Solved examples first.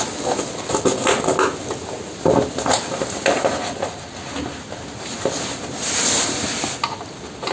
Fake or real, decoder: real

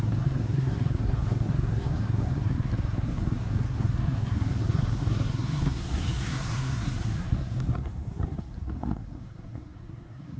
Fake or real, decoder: fake, codec, SNAC